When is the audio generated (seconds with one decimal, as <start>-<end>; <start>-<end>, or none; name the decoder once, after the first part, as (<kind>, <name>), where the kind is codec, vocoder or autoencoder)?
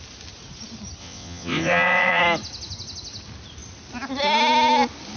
1.0-2.2 (vocoder, WaveNeXt)